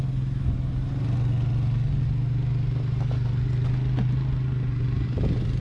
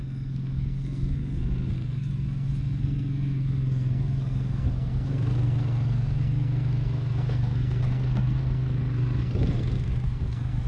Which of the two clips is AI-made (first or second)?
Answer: second